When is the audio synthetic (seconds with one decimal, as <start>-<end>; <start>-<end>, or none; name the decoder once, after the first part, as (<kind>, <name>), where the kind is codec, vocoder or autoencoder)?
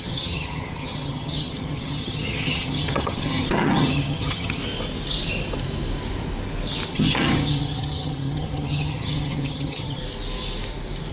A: 0.0-4.6 (vocoder, HiFi-GAN); 6.9-10.0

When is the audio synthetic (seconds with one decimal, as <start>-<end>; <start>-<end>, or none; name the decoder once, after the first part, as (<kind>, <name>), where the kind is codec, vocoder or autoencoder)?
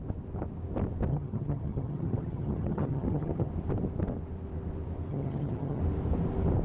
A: 1.1-3.5 (vocoder, HiFi-GAN); 5.1-5.8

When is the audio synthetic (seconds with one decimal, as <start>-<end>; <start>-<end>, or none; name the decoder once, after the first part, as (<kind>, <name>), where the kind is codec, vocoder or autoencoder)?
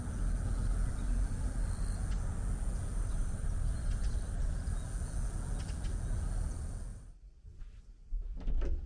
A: 2.9-4.4 (vocoder, BigVGAN v2); 6.9-7.6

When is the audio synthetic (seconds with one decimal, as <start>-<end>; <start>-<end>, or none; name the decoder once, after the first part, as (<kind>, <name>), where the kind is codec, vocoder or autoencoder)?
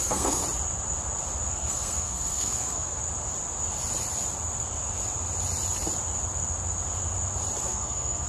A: 0.0-0.4 (codec, SNAC); 1.5-3.0; 7.6-8.3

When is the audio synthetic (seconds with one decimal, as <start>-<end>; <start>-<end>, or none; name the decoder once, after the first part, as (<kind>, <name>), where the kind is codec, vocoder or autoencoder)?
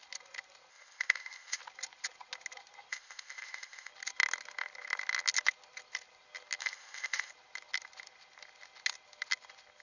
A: 0.7-1.6 (codec, ZipCodec); 2.9-3.9; 6.6-7.3